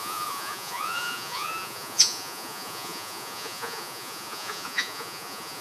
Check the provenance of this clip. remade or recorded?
remade